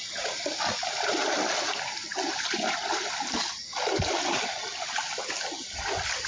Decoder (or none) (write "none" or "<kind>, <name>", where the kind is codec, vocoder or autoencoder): none